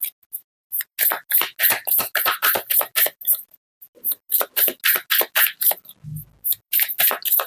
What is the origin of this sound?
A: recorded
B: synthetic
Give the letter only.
A